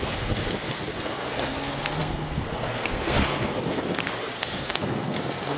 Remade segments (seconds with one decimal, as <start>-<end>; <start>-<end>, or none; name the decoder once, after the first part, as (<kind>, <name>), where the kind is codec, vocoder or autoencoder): 0.0-5.6 (codec, SNAC)